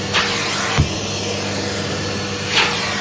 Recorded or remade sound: recorded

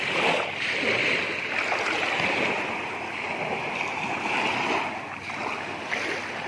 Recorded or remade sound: recorded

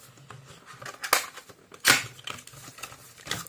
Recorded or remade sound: recorded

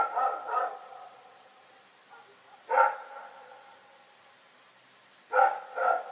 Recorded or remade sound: recorded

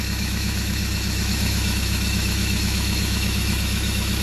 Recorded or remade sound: remade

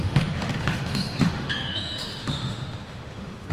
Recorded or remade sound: remade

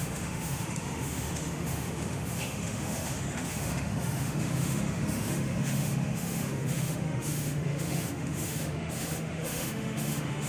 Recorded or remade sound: remade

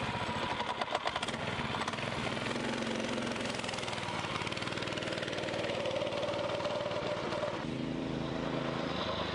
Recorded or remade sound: recorded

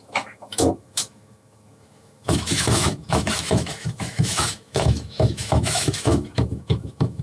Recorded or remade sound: remade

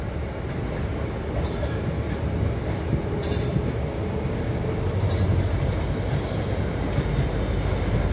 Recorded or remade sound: recorded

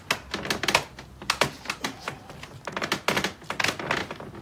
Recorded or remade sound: recorded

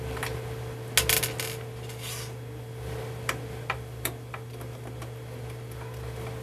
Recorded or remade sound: recorded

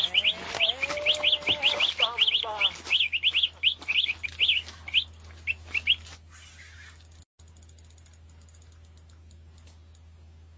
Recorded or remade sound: recorded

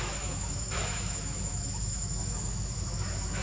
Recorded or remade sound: remade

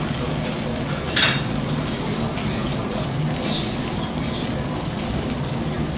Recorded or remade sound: recorded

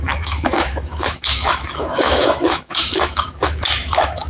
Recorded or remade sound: remade